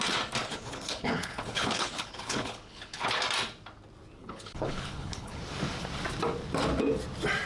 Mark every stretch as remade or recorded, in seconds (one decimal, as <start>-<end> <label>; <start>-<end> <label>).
0.0-0.5 recorded; 0.5-3.2 remade; 3.2-4.2 recorded; 4.2-5.4 remade; 5.4-7.5 recorded